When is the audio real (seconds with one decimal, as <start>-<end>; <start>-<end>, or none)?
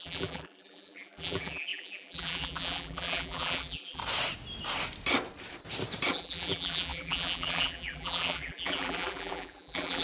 4.0-6.1